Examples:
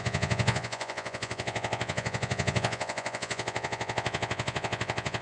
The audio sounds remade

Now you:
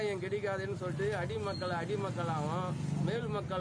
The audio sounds recorded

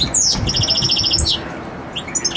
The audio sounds recorded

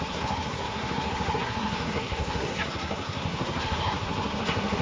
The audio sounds remade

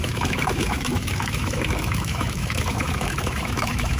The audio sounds remade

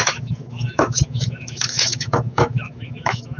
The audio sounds remade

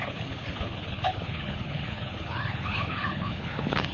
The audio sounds remade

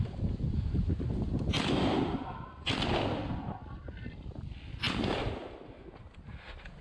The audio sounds recorded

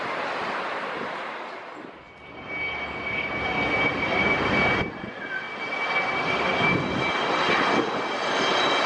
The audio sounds recorded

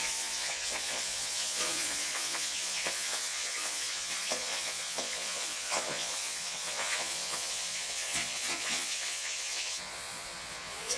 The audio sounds remade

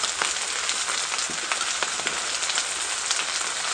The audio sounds recorded